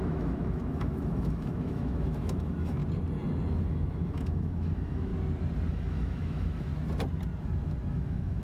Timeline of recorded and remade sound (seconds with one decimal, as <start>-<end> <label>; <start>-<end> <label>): 0.0-2.8 remade; 2.8-3.5 recorded; 3.5-5.1 remade; 5.1-5.7 recorded; 5.7-6.7 remade; 6.7-7.9 recorded; 7.9-8.4 remade